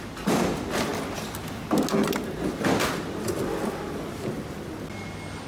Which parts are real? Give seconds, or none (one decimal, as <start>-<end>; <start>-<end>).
0.0-5.5